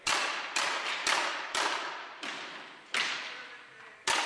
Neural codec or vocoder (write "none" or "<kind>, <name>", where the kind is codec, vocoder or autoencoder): none